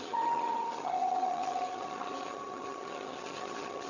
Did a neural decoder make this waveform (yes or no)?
yes